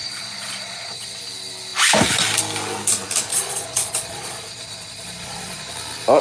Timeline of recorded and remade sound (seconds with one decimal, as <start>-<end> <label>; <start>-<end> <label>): 0.0-1.2 remade; 1.2-3.3 recorded; 3.3-5.7 remade; 5.7-6.2 recorded